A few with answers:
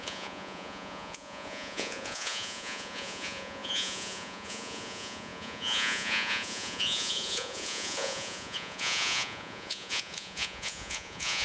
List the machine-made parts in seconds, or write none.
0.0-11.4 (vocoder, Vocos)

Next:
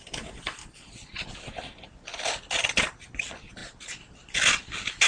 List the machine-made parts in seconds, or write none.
none

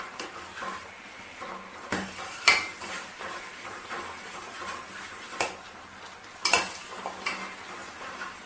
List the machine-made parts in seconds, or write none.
1.7-4.5 (vocoder, BigVGAN v2); 7.8-8.5

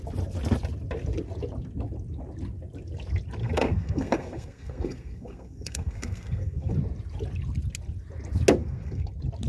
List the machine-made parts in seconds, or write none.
3.4-6.7 (codec, SNAC); 8.6-9.1

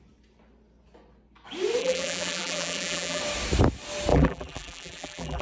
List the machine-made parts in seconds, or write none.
1.8-3.2 (vocoder, BigVGAN v2); 4.1-5.4

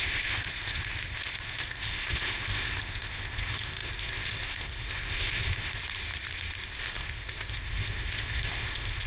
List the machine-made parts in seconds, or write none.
0.0-5.8 (codec, ZipCodec); 6.8-9.1